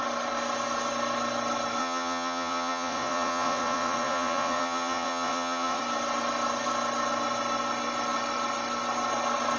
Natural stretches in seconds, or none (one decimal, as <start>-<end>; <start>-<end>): 0.0-1.8; 5.8-9.6